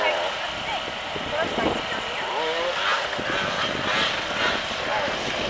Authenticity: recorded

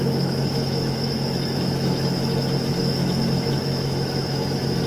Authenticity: remade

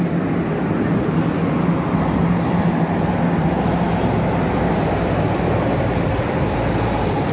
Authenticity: recorded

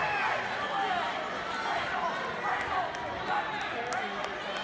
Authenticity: recorded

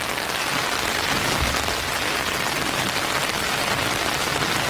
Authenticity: recorded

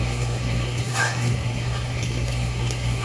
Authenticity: remade